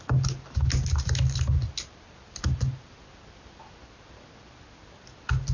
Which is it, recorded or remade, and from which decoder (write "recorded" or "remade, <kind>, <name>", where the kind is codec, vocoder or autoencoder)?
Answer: recorded